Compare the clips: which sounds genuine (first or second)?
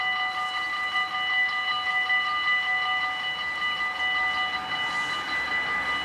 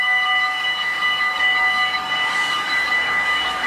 first